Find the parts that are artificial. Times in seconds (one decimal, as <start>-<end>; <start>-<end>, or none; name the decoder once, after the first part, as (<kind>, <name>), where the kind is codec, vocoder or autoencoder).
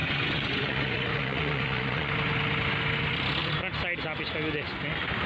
0.0-2.1 (vocoder, Vocos)